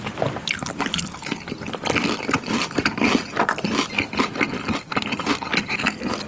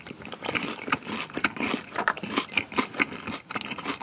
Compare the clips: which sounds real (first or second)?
first